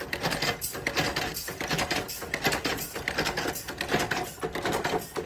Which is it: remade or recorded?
recorded